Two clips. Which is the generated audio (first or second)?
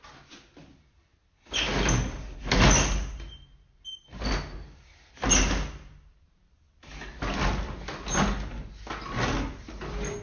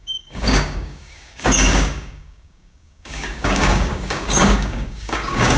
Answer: second